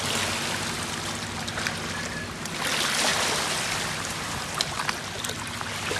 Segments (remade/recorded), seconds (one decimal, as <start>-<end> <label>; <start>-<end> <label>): 0.0-6.0 recorded